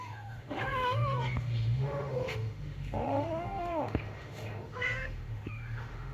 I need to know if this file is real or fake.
fake